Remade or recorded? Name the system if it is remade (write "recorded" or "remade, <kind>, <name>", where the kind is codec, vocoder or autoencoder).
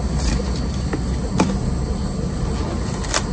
recorded